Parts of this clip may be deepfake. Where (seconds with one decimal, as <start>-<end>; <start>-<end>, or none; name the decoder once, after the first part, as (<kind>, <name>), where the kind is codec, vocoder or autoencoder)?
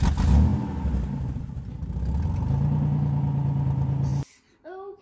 none